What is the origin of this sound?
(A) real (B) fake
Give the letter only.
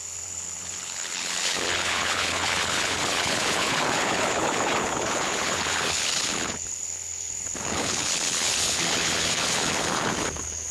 B